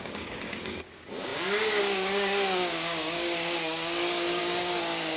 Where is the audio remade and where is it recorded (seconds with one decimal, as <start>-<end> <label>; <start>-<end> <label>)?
0.0-5.2 remade

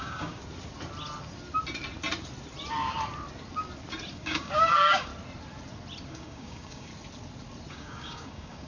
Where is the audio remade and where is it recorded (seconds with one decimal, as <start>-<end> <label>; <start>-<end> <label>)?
0.0-0.4 remade; 0.4-4.1 recorded; 4.1-5.1 remade; 5.1-6.1 recorded; 6.1-6.9 remade; 6.9-7.7 recorded; 7.7-8.7 remade

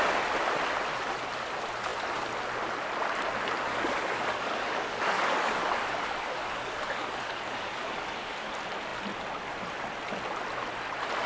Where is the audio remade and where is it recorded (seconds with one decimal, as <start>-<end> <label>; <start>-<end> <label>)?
0.0-3.7 recorded; 3.7-8.5 remade; 8.5-11.3 recorded

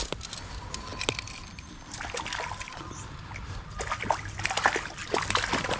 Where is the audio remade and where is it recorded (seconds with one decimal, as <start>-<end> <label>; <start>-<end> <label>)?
0.0-5.8 recorded

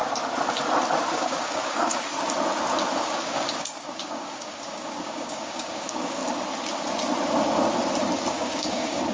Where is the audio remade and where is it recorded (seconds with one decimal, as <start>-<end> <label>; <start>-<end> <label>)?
0.0-1.1 recorded; 1.1-1.9 remade; 1.9-3.0 recorded; 3.0-6.2 remade; 6.2-8.3 recorded; 8.3-9.1 remade

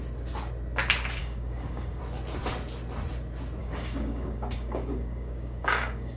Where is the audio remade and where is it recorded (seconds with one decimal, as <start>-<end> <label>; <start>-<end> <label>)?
0.0-1.2 recorded; 1.2-2.0 remade; 2.0-3.6 recorded; 3.6-6.2 remade

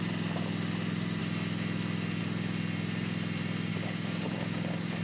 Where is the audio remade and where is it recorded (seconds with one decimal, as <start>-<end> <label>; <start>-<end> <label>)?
0.0-3.7 recorded; 3.7-5.0 remade